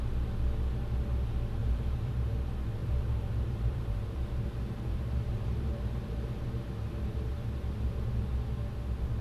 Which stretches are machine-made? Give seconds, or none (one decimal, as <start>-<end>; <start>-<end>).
1.6-2.1; 2.8-6.4